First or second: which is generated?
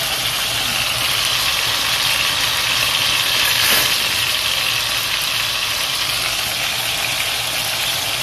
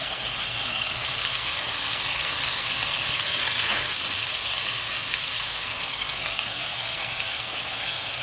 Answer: second